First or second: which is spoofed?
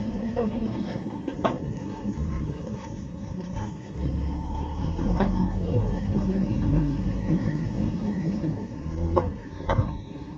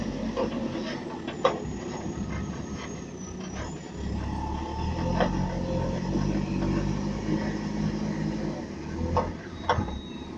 first